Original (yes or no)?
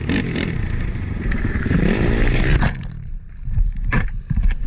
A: no